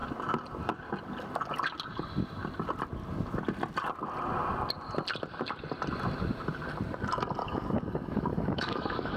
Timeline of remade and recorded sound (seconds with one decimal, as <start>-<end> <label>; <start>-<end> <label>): 0.0-7.4 recorded; 7.4-9.2 remade